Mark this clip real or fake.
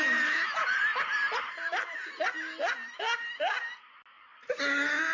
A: real